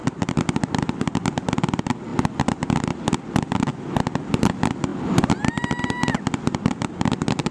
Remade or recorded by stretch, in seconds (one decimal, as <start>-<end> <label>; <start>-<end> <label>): 0.0-1.2 remade; 1.2-3.7 recorded; 3.7-4.3 remade; 4.3-7.5 recorded